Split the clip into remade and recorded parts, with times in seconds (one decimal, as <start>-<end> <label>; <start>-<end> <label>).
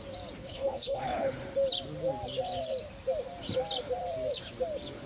0.0-0.4 recorded; 0.4-1.3 remade; 1.3-5.1 recorded